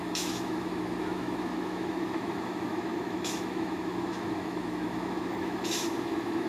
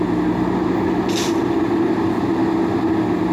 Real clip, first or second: second